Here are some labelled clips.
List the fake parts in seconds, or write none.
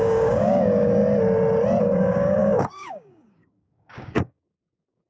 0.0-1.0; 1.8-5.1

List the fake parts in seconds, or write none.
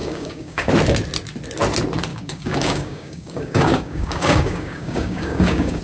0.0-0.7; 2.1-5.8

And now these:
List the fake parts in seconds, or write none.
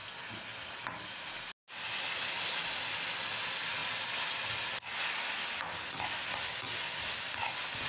none